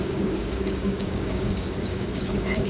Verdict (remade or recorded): remade